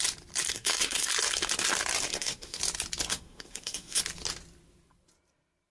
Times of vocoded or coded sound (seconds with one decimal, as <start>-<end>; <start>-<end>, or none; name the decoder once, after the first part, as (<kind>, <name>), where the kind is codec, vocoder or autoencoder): 0.5-1.1 (codec, SNAC); 2.1-2.6; 3.1-4.0